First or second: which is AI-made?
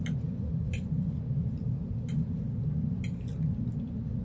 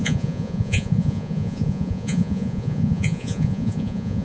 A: second